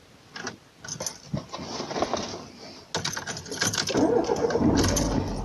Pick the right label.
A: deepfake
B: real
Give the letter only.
B